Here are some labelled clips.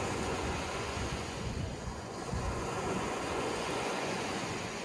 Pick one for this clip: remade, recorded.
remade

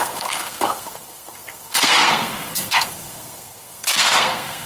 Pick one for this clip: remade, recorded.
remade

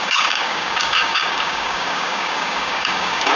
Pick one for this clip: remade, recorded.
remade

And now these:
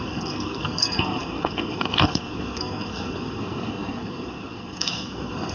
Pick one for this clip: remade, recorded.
remade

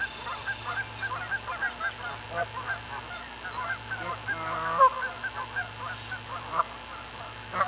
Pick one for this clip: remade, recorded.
recorded